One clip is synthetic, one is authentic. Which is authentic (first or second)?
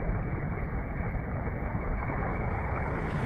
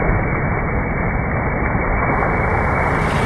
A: second